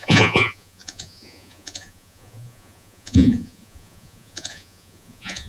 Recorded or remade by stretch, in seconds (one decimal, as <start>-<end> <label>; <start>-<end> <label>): 0.0-5.5 remade